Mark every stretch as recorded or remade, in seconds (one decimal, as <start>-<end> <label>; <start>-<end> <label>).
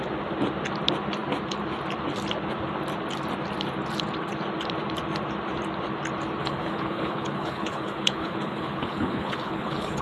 0.0-6.4 recorded; 6.4-10.0 remade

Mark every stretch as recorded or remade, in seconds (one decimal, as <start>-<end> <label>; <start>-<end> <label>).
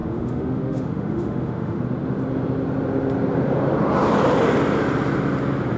0.0-1.8 remade; 1.8-5.8 recorded